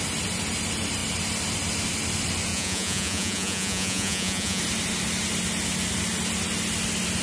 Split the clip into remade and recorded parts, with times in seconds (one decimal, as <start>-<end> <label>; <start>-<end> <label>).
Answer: 0.0-2.5 recorded; 2.5-4.6 remade; 4.6-7.2 recorded